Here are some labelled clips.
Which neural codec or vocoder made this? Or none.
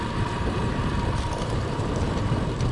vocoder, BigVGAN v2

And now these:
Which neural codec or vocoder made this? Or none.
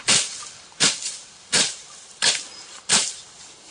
none